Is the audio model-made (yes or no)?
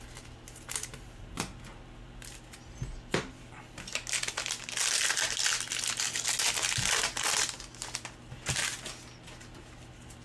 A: no